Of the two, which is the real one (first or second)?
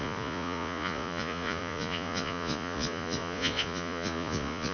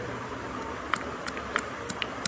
second